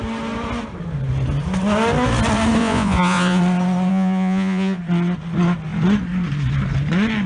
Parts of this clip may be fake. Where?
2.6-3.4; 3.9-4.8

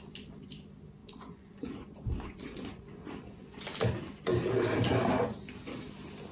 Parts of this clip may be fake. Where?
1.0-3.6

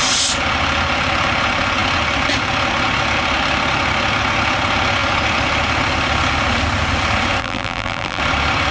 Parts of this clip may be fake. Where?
7.4-8.2